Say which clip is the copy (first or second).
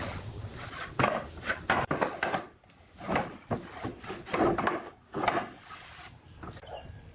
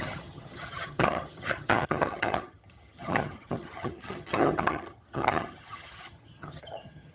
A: second